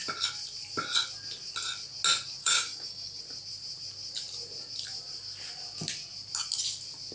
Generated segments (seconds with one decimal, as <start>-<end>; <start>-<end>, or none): 2.4-3.2